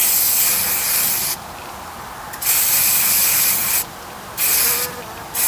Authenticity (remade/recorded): recorded